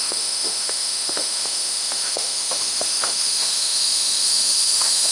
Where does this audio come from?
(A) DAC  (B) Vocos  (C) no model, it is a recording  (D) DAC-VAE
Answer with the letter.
D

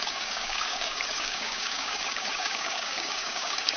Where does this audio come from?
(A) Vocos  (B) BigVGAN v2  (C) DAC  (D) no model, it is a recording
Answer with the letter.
C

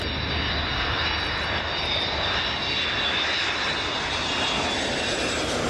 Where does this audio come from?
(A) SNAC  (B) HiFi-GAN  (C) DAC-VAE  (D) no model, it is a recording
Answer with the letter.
D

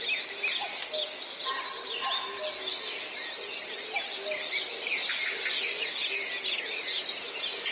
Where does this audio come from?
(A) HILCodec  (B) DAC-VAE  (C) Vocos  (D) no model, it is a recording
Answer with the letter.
D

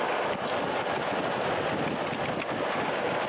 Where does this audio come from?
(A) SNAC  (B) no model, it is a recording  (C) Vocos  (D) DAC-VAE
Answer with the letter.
B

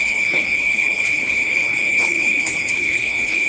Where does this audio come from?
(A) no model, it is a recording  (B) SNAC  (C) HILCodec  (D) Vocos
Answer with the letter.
C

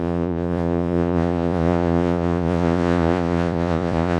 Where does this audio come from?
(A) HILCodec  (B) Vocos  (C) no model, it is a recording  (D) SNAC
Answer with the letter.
B